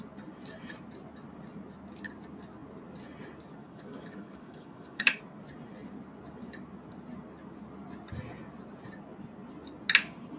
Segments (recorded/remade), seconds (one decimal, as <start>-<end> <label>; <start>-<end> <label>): 0.0-3.6 recorded; 3.6-5.2 remade; 5.2-10.4 recorded